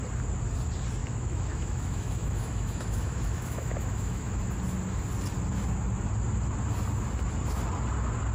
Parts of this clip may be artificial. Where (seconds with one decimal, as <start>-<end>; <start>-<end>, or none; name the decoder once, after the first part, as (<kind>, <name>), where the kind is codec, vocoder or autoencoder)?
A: 1.0-4.4 (autoencoder, DAC-VAE)